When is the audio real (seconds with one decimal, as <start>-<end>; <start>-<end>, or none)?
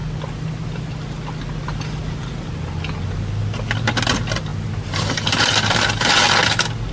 0.0-6.9